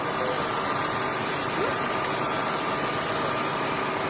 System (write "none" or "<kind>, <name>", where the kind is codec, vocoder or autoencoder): none